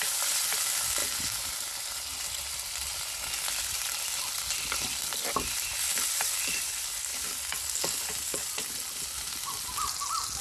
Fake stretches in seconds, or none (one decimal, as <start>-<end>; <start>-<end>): none